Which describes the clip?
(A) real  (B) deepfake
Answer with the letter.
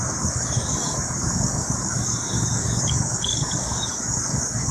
B